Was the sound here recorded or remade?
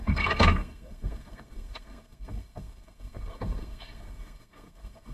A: remade